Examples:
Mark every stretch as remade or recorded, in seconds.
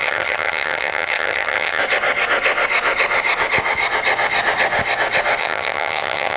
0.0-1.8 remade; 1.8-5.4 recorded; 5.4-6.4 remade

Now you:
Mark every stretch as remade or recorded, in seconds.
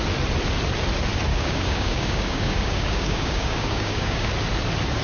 0.0-1.3 recorded; 1.3-4.3 remade; 4.3-5.0 recorded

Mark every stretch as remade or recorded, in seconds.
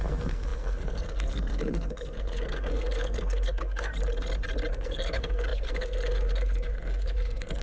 0.0-3.9 remade; 3.9-4.7 recorded; 4.7-7.6 remade